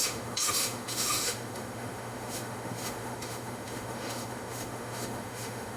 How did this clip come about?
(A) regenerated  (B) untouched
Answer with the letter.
A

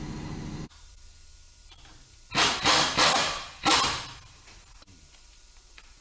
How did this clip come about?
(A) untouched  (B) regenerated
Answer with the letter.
A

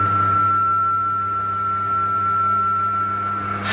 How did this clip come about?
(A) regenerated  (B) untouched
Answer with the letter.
B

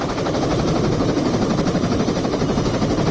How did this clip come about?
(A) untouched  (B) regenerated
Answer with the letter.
A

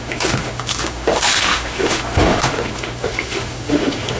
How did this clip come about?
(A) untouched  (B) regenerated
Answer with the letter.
B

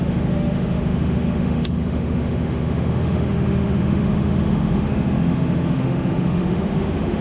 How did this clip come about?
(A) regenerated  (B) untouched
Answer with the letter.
A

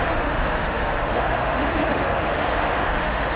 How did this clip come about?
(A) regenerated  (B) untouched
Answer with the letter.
A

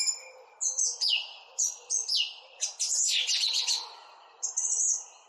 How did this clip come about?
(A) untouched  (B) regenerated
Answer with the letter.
A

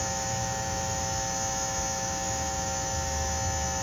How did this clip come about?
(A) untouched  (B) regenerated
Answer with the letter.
B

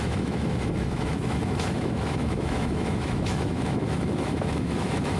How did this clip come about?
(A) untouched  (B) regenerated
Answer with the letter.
B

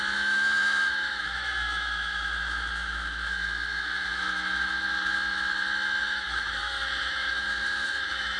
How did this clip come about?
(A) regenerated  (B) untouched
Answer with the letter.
A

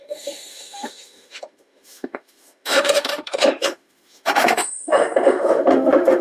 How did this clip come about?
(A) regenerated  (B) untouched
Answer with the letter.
A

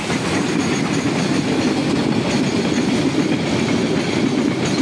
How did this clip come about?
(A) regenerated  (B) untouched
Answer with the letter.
B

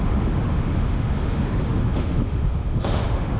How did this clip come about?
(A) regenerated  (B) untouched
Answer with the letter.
A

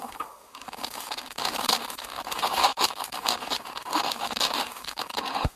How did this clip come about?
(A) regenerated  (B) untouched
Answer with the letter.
A